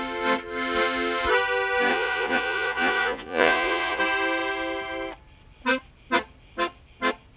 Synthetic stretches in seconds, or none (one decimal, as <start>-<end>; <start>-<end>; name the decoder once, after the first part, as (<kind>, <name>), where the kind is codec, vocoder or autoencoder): 1.9-4.0 (vocoder, Vocos)